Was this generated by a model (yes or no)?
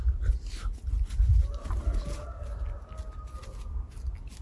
no